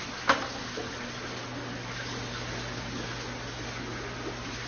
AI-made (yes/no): no